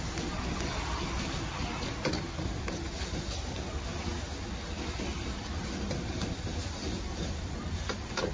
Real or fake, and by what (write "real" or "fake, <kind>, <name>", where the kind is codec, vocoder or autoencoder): real